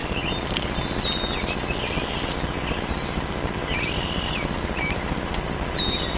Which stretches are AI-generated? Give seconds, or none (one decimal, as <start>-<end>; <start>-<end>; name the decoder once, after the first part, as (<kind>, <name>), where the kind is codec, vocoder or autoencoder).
none